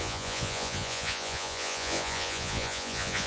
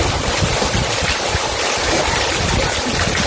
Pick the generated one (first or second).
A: first